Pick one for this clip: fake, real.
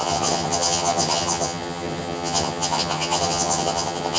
fake